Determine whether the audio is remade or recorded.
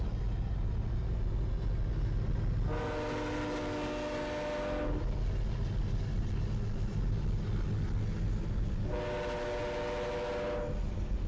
recorded